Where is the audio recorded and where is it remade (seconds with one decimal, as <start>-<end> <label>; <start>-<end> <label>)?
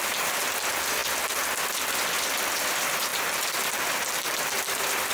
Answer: 0.0-5.1 remade